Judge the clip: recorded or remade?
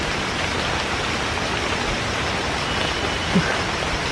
recorded